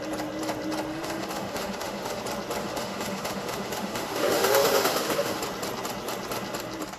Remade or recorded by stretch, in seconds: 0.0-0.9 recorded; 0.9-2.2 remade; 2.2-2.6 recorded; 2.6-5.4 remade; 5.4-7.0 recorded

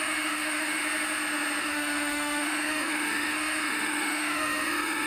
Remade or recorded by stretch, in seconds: 0.0-0.8 remade; 0.8-1.6 recorded; 1.6-5.1 remade

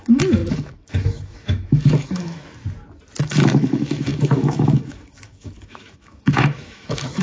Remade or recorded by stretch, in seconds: 0.0-2.4 remade; 2.4-3.2 recorded; 3.2-7.2 remade

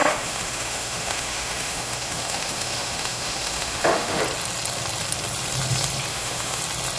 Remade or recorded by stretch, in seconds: 0.0-4.2 remade; 4.2-6.1 recorded; 6.1-6.6 remade; 6.6-7.0 recorded

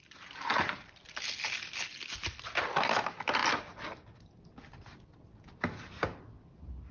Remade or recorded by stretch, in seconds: 0.0-6.9 recorded